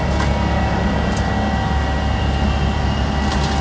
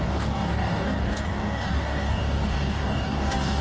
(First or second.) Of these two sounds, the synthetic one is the second